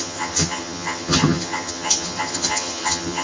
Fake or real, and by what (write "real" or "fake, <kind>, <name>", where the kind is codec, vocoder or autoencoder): fake, vocoder, HiFi-GAN